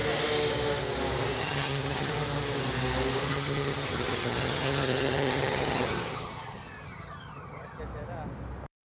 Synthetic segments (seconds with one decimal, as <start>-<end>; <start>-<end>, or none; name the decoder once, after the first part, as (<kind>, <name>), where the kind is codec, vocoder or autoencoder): 1.4-2.1 (vocoder, HiFi-GAN); 3.3-7.8